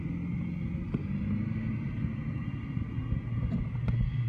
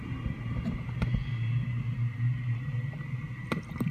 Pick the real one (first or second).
first